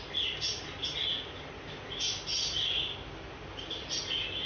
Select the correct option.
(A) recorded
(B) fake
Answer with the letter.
A